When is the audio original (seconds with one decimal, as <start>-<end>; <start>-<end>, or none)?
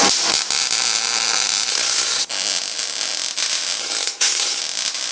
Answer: 0.0-1.7; 2.3-3.8; 4.6-5.1